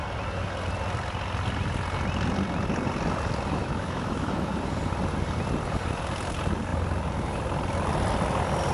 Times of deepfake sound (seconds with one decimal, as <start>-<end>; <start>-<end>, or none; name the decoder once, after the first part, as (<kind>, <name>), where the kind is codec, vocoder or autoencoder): 3.6-4.5 (autoencoder, DAC-VAE)